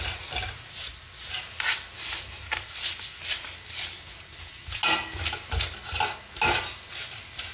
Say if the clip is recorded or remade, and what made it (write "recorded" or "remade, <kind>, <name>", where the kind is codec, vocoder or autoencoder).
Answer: recorded